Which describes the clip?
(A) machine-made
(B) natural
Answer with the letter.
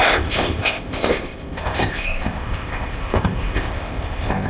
A